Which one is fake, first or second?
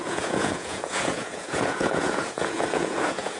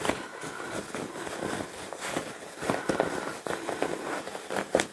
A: first